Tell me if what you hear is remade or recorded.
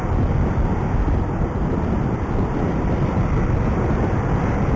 recorded